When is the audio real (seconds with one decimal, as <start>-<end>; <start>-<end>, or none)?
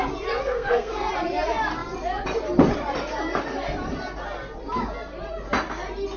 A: 0.0-0.4; 1.1-6.2